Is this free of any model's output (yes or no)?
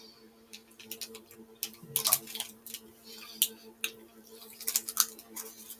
yes